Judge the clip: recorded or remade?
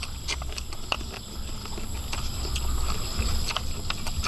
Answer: recorded